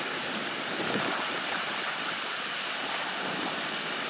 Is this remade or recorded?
recorded